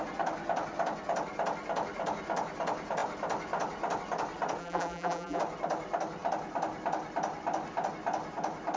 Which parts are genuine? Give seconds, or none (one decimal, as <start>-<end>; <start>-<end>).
0.0-4.6; 5.4-8.8

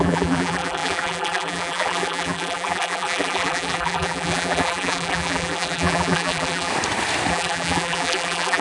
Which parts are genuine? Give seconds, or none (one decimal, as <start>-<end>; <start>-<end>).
6.7-7.3

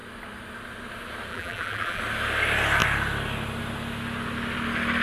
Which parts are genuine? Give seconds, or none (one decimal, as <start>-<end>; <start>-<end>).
0.0-1.3; 2.0-5.0

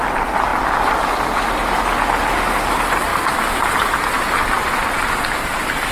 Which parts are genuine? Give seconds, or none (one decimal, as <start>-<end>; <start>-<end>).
0.0-5.9